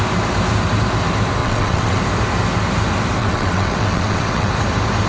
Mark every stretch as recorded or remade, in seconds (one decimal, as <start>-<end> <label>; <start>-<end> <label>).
0.0-1.4 recorded; 1.4-2.0 remade; 2.0-3.2 recorded; 3.2-4.5 remade; 4.5-5.1 recorded